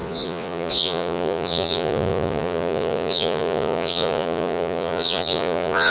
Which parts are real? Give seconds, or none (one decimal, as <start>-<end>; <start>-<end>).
none